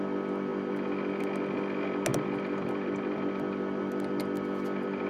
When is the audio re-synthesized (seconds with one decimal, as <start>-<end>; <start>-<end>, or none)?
2.1-3.8